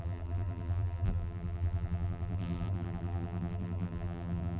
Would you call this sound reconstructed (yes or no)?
yes